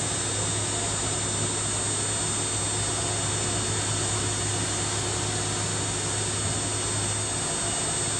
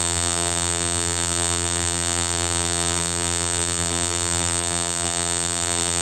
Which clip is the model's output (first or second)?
second